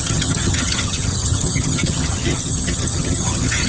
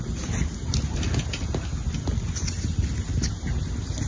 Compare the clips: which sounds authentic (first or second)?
second